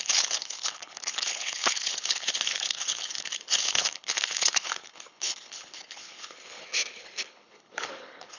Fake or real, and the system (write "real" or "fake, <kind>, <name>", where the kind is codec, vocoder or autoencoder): fake, codec, HILCodec